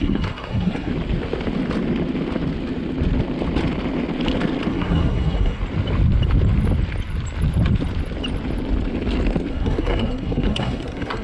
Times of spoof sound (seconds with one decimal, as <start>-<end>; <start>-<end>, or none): 0.0-0.9; 4.7-5.6; 9.5-11.2